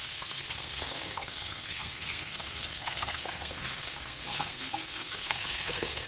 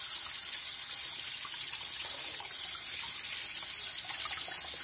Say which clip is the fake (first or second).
first